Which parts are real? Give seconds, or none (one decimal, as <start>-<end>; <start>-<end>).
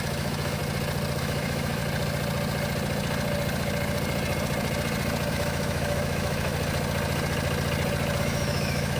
0.6-1.2; 1.8-5.3; 6.5-8.2